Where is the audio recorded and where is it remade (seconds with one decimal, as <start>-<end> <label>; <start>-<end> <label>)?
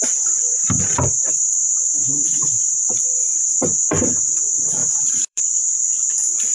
0.0-2.0 recorded; 2.0-3.4 remade; 3.4-4.8 recorded; 4.8-5.8 remade; 5.8-6.5 recorded